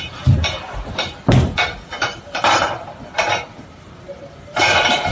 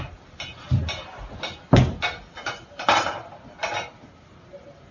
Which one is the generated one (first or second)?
first